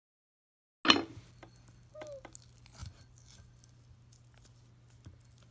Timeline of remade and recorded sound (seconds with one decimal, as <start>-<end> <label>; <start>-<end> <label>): 0.0-5.5 recorded